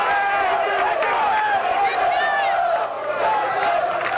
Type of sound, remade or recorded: recorded